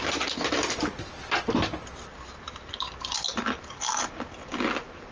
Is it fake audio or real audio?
real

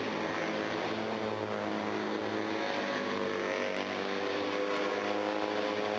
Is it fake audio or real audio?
real